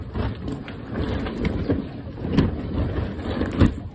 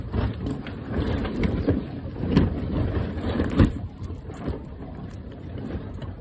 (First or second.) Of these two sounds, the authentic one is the first